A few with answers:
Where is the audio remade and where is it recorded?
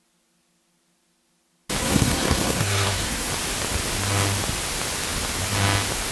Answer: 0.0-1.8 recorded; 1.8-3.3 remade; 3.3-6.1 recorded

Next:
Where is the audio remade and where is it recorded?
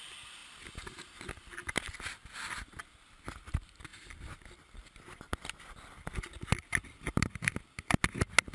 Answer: 0.0-8.5 recorded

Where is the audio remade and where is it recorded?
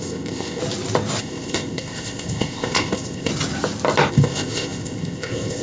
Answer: 0.0-0.6 remade; 0.6-1.2 recorded; 1.2-3.3 remade; 3.3-4.1 recorded; 4.1-5.6 remade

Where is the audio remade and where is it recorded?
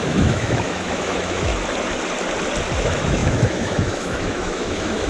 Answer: 0.0-1.5 remade; 1.5-2.8 recorded; 2.8-5.1 remade